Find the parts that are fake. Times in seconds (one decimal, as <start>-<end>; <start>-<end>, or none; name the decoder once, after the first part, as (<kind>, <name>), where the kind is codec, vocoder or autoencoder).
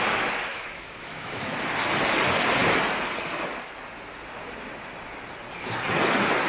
0.5-1.5 (autoencoder, DAC-VAE)